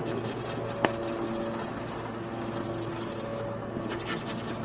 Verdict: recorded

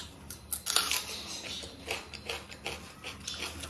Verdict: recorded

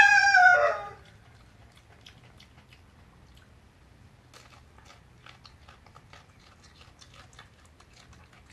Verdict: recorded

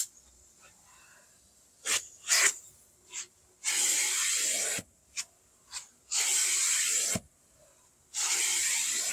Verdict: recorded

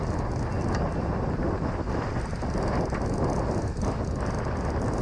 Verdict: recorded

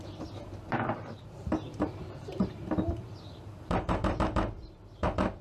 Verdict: remade